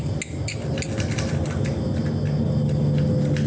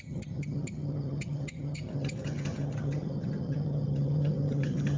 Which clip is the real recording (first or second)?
first